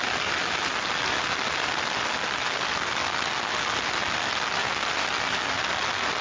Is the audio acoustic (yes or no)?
yes